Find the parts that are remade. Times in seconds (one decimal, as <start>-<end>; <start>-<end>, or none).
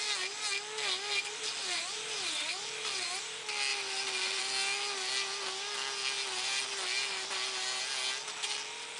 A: 3.7-4.4